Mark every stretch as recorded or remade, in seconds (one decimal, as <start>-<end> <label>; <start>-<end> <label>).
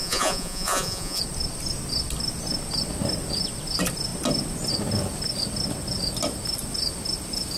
0.0-1.2 remade; 1.2-7.6 recorded